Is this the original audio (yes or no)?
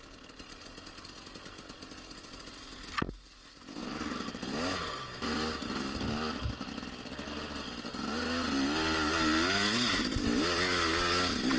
yes